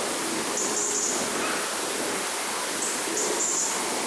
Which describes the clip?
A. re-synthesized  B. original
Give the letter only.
B